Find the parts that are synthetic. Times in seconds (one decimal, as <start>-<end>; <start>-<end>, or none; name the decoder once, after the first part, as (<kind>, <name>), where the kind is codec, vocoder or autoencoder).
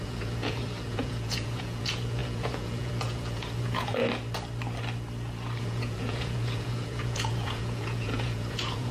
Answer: 0.0-4.0 (vocoder, Vocos); 5.6-8.9